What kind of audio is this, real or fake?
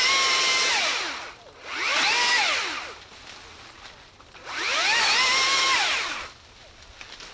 real